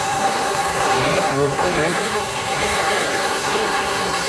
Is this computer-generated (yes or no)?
yes